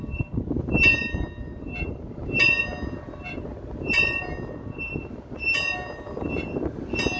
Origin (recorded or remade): recorded